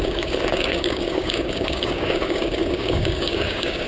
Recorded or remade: remade